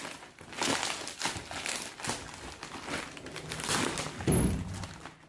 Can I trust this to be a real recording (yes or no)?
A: yes